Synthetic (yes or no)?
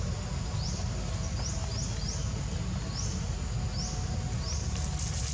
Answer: no